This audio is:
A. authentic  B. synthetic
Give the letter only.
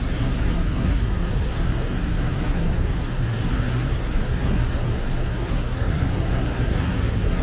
B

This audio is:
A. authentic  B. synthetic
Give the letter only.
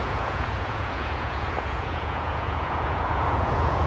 B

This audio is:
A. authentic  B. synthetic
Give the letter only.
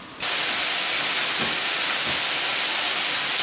A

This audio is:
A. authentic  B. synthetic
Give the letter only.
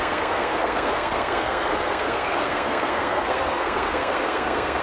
B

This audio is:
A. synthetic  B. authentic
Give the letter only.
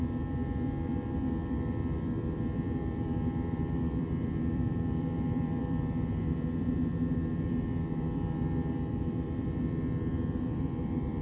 A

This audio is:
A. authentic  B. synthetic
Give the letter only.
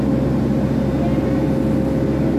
A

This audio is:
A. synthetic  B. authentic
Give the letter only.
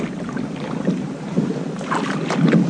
B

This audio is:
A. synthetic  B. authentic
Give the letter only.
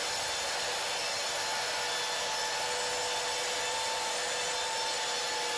B